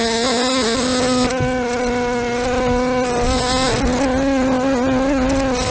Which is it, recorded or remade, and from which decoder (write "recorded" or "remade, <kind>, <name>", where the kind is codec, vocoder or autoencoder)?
recorded